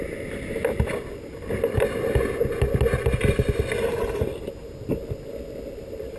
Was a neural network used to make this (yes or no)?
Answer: no